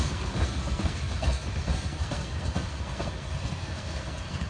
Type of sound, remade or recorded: remade